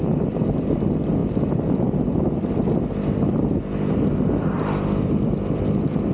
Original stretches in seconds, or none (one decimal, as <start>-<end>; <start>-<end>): 0.0-6.1